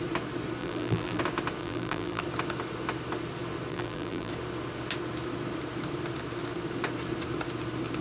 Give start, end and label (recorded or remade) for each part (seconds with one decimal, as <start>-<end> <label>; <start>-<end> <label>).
0.0-0.6 recorded; 0.6-1.2 remade; 1.2-1.6 recorded; 1.6-2.2 remade; 2.2-3.7 recorded; 3.7-4.3 remade; 4.3-8.0 recorded